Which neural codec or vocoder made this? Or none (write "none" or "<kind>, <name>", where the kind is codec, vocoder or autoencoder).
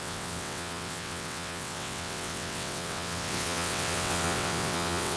vocoder, WaveNeXt